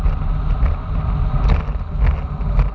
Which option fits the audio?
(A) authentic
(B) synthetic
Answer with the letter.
A